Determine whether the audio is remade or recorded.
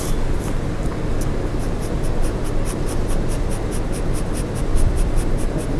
recorded